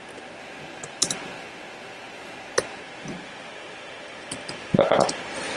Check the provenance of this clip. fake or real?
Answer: real